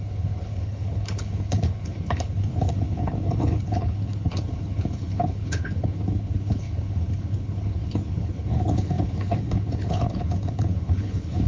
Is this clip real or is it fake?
fake